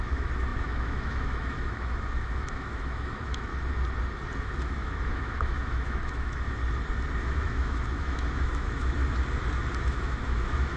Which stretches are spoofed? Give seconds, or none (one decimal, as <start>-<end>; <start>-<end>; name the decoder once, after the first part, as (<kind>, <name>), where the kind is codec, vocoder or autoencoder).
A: 0.0-3.5 (autoencoder, DAC-VAE); 4.4-6.6; 7.2-9.0; 9.8-10.8